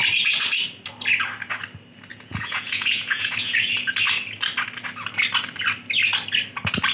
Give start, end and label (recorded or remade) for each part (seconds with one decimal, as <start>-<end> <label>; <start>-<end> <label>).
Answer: 0.0-2.1 recorded; 2.1-3.7 remade; 3.7-6.9 recorded